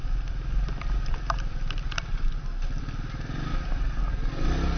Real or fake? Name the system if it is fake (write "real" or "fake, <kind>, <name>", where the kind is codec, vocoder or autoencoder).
real